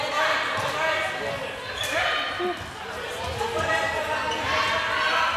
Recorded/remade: recorded